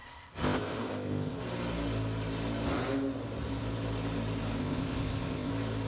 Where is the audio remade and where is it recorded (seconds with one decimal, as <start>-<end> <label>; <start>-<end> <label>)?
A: 0.0-1.4 remade; 1.4-4.6 recorded; 4.6-5.5 remade; 5.5-5.9 recorded